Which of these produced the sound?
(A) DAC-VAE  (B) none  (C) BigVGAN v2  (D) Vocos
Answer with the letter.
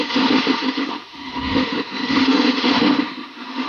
A